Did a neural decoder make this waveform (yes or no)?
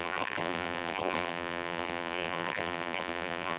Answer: yes